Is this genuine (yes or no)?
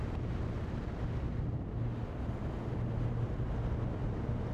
yes